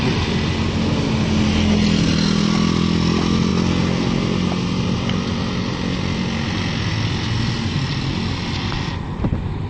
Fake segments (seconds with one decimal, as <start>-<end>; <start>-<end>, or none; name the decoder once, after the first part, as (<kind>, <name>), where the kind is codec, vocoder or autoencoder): none